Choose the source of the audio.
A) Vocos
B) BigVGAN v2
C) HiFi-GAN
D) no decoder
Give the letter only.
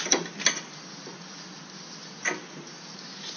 D